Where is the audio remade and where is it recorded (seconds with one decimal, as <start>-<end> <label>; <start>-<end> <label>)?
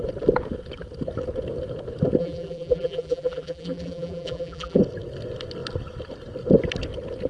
0.0-2.2 recorded; 2.2-4.8 remade; 4.8-7.3 recorded